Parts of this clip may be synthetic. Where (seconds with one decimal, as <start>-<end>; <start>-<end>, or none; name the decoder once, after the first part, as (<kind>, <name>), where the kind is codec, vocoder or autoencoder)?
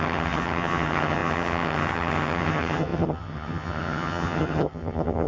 0.0-5.3 (vocoder, HiFi-GAN)